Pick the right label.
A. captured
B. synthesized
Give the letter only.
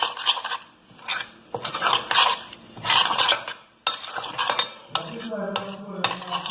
A